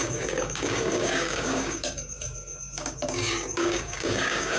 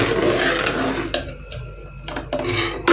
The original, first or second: second